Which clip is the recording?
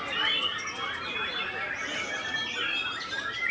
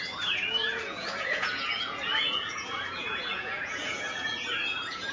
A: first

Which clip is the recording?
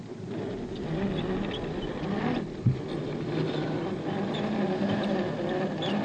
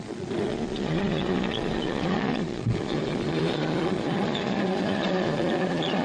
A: first